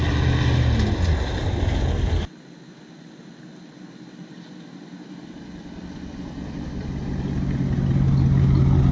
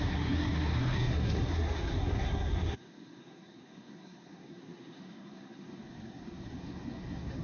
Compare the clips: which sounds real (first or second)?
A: first